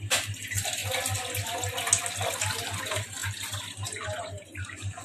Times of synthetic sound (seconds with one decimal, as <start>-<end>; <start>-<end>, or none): 0.0-0.8; 2.8-5.0